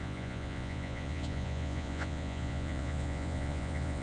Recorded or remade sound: remade